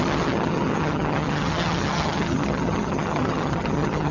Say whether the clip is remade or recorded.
remade